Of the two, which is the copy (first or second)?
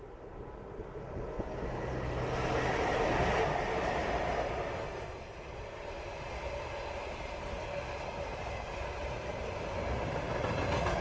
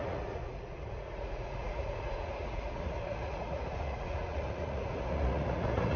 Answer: second